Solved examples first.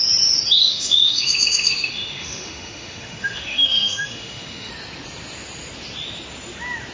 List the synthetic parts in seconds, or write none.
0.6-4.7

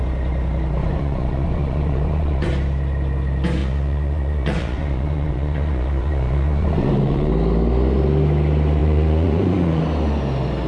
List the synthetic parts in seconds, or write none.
0.8-2.5; 3.6-7.3; 8.8-9.8

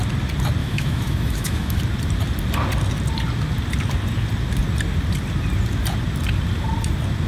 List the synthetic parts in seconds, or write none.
0.6-1.8

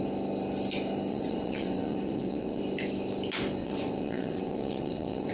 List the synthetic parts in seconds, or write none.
1.1-2.6; 3.6-5.3